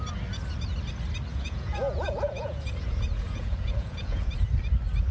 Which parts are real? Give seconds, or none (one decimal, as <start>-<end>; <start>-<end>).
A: 0.0-1.3; 4.3-5.1